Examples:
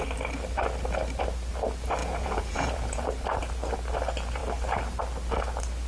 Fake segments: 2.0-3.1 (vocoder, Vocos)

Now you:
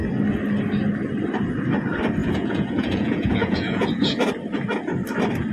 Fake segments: 2.2-4.2 (vocoder, Vocos)

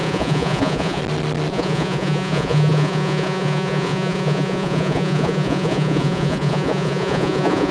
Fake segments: 0.0-1.0 (vocoder, Vocos); 1.5-7.7

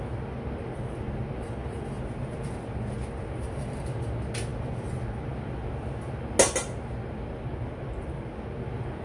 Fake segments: none